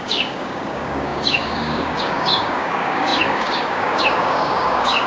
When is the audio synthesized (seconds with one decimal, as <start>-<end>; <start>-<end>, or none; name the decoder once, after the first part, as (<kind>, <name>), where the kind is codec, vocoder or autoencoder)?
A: 0.0-5.1 (codec, DAC)